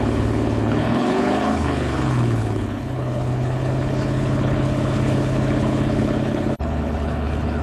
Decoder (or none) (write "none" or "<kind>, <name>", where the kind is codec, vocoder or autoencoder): codec, HILCodec